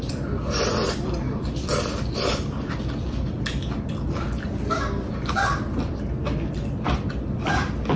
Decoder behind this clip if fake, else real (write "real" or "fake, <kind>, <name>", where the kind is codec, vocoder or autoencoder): real